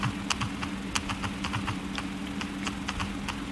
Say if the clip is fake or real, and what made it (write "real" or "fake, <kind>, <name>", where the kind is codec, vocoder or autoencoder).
real